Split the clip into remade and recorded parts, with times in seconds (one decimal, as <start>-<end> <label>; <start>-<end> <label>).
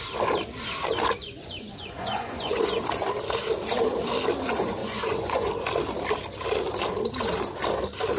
0.0-1.2 recorded; 1.2-2.8 remade; 2.8-4.8 recorded; 4.8-5.5 remade; 5.5-8.2 recorded